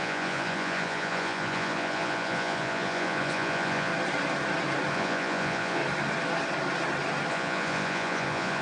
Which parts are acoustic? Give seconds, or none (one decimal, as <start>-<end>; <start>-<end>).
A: 3.9-4.9; 5.8-7.3